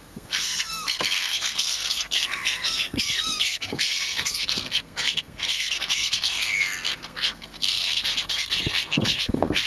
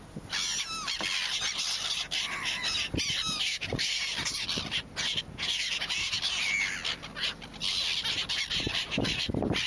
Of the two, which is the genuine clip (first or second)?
second